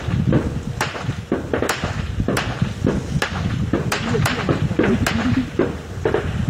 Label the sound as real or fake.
real